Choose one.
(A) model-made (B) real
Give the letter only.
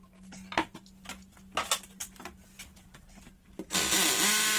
B